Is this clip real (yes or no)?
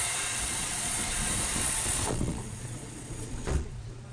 no